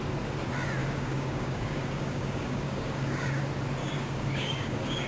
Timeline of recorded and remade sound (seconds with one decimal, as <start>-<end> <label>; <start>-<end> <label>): 0.0-0.8 recorded; 0.8-3.4 remade; 3.4-3.8 recorded; 3.8-5.1 remade